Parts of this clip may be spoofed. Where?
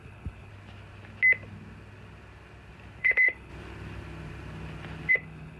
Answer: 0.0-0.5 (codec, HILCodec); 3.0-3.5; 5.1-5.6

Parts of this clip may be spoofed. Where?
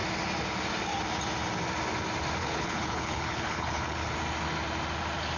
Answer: 2.4-4.1 (codec, HILCodec)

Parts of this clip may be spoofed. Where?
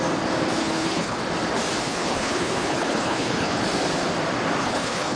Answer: 0.6-1.2 (codec, HILCodec); 1.8-3.6; 4.6-5.2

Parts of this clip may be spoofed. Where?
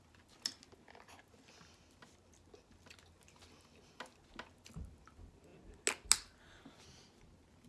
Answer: none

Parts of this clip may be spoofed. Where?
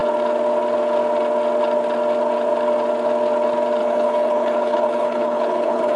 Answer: 3.8-6.0 (codec, HILCodec)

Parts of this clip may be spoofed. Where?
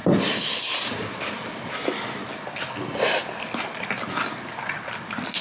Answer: none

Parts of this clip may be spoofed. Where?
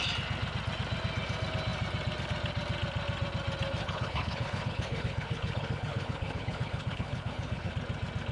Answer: 3.8-7.7 (codec, HILCodec)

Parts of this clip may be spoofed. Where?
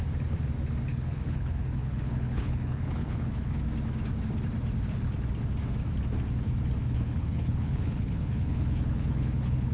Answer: 0.9-3.6 (codec, HILCodec); 6.8-9.7